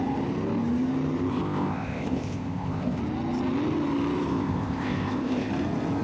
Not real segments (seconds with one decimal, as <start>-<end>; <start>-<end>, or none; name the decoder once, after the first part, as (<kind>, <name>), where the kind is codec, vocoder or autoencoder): 1.3-3.0 (codec, ZipCodec); 4.3-5.5

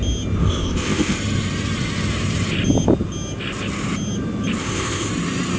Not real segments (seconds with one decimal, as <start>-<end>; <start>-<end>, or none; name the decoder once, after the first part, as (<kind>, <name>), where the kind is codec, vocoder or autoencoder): 0.4-1.2 (codec, ZipCodec); 4.6-5.1

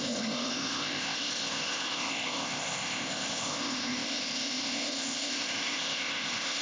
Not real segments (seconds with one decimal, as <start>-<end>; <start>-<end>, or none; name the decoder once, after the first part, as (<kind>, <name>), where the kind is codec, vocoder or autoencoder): 0.0-6.6 (codec, ZipCodec)